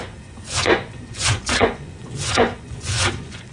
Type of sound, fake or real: fake